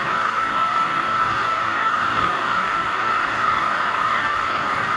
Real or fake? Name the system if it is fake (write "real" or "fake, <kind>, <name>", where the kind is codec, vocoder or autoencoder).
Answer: fake, codec, DAC